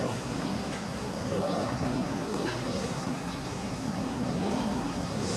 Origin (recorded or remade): remade